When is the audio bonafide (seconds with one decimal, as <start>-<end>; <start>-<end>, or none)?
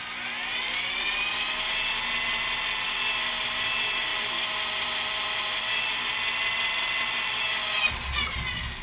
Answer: 0.0-4.1; 5.9-8.8